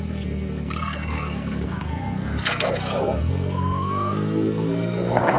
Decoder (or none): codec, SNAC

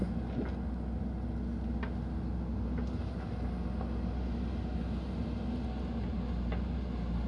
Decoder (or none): none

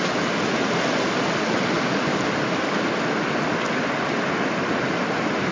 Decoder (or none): none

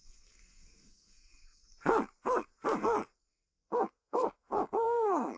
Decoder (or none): codec, SNAC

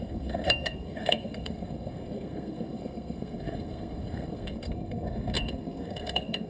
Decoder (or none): codec, SNAC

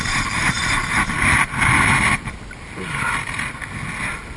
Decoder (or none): none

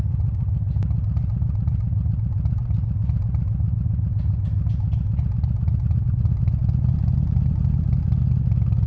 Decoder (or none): none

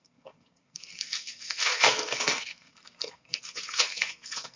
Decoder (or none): codec, SNAC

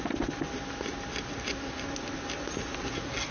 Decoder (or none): none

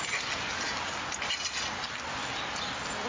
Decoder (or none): none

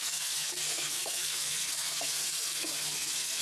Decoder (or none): codec, SNAC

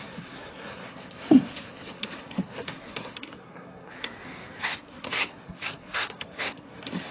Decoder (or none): codec, SNAC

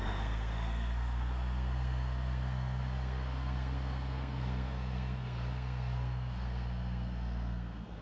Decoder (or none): codec, SNAC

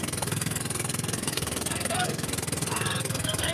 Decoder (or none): codec, SNAC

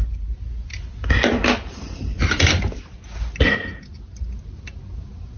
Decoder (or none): none